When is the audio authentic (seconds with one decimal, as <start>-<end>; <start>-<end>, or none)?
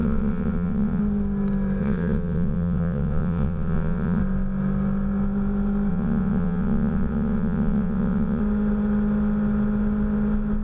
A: 1.0-1.8; 4.2-5.9; 8.4-10.6